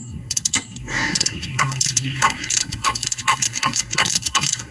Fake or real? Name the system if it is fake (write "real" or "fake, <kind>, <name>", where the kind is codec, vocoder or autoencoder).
fake, codec, SNAC